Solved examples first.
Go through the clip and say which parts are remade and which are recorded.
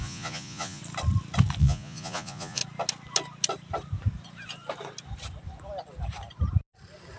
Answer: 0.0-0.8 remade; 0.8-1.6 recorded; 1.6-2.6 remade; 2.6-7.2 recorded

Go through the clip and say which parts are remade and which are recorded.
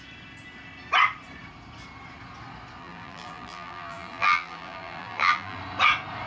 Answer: 0.0-2.8 recorded; 2.8-5.6 remade; 5.6-6.3 recorded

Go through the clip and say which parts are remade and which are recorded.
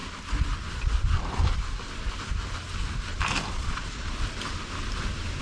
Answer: 0.0-3.6 recorded; 3.6-4.1 remade; 4.1-5.4 recorded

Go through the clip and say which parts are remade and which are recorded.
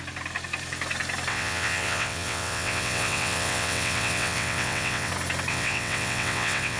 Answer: 0.0-1.3 recorded; 1.3-5.1 remade; 5.1-5.5 recorded; 5.5-6.8 remade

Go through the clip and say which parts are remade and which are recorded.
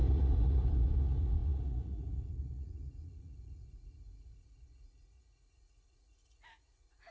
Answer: 0.0-7.1 remade